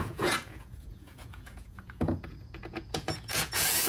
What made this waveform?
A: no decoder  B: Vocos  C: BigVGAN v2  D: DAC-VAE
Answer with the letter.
B